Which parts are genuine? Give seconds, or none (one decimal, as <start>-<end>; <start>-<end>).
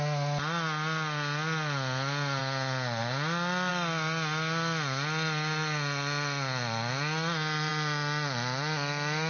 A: 0.0-9.3